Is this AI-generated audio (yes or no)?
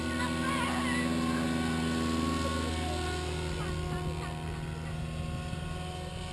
no